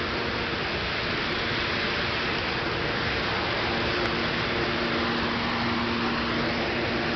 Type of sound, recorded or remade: recorded